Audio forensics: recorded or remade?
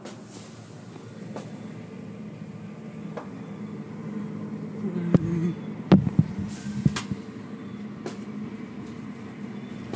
recorded